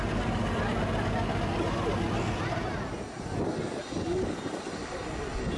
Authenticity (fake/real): real